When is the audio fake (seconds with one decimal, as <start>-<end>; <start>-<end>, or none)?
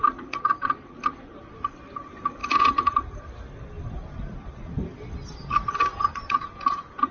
2.4-3.2; 5.9-7.1